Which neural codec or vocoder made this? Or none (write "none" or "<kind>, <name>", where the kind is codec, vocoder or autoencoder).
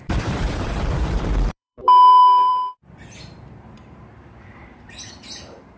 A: vocoder, BigVGAN v2